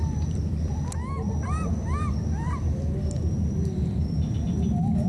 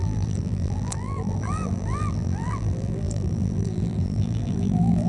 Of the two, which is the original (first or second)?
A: first